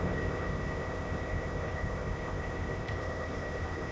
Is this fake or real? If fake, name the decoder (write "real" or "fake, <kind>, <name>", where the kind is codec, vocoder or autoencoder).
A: fake, codec, ZipCodec